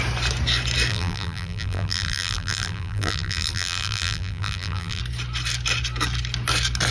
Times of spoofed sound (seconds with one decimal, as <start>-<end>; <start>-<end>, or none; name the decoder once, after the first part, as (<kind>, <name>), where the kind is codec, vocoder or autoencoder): 0.9-5.0 (vocoder, BigVGAN v2)